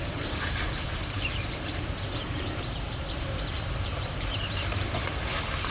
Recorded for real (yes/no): no